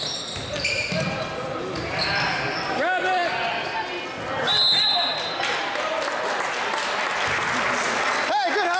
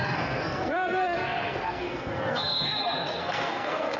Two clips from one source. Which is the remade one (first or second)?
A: second